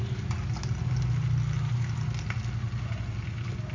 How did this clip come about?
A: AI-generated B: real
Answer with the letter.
B